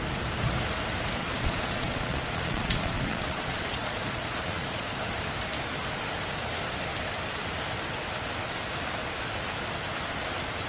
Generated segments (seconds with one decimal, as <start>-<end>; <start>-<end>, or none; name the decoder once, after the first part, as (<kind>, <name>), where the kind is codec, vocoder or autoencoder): 1.2-5.0 (vocoder, Vocos)